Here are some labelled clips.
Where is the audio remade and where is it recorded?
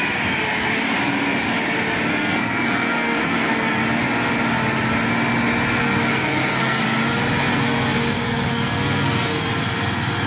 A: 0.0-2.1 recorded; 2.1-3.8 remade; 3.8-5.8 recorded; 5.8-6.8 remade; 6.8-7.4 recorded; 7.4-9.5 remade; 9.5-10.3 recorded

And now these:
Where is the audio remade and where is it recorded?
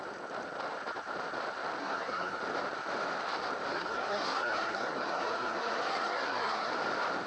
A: 0.0-1.8 recorded; 1.8-2.4 remade; 2.4-3.7 recorded; 3.7-6.7 remade; 6.7-7.3 recorded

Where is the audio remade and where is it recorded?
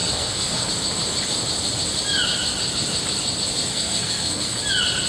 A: 0.0-0.7 remade; 0.7-3.7 recorded; 3.7-4.6 remade; 4.6-5.1 recorded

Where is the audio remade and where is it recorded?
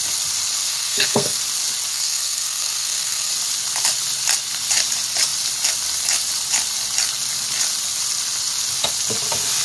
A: 0.0-0.7 recorded; 0.7-1.4 remade; 1.4-1.9 recorded; 1.9-3.3 remade; 3.3-9.6 recorded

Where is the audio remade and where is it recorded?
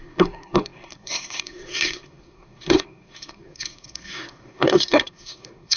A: 0.0-5.8 remade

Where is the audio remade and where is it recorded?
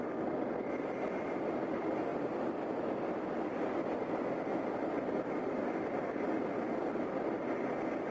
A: 0.0-8.1 recorded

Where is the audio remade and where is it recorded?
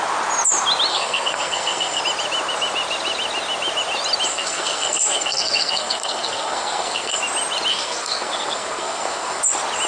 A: 0.0-0.9 recorded; 0.9-2.0 remade; 2.0-4.3 recorded; 4.3-7.2 remade; 7.2-7.7 recorded; 7.7-9.4 remade; 9.4-9.9 recorded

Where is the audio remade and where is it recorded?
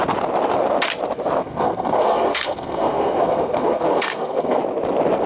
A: 0.0-1.4 recorded; 1.4-4.6 remade; 4.6-5.3 recorded